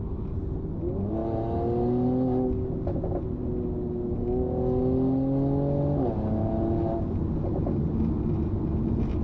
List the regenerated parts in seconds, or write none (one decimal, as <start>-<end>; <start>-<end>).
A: none